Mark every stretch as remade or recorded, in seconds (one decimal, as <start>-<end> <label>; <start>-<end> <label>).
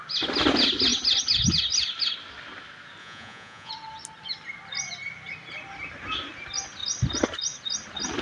0.0-3.0 recorded; 3.0-3.7 remade; 3.7-8.2 recorded